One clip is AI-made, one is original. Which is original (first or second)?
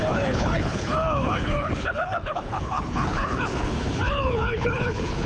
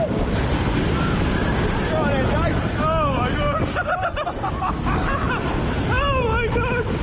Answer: second